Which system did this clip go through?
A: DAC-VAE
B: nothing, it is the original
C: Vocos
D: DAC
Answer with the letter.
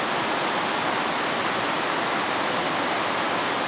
B